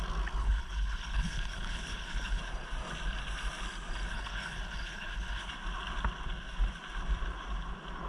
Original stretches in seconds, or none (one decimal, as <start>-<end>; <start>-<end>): 0.0-0.4; 2.4-4.1; 5.5-8.1